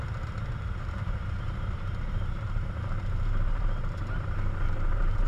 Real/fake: fake